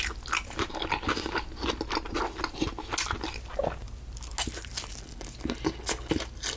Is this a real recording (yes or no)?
yes